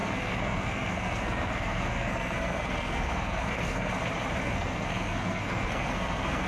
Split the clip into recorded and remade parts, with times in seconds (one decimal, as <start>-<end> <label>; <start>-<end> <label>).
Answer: 0.0-3.9 remade; 3.9-4.4 recorded; 4.4-6.5 remade

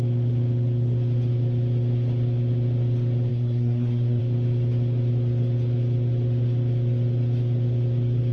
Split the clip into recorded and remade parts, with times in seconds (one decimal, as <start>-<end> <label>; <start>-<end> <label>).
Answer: 0.0-3.3 recorded; 3.3-4.2 remade; 4.2-8.3 recorded